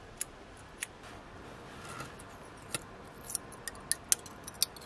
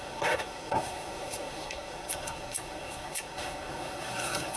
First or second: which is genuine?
first